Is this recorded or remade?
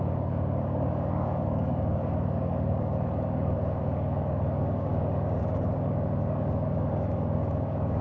remade